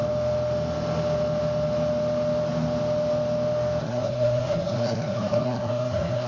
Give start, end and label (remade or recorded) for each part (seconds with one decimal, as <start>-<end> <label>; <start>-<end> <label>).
0.0-3.8 recorded; 3.8-6.3 remade